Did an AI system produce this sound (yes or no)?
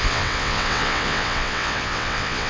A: yes